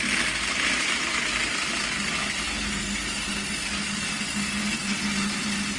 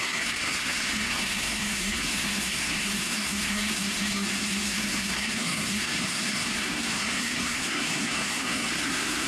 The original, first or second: first